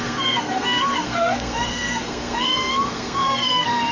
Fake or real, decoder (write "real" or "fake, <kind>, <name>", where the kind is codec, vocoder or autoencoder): fake, codec, SNAC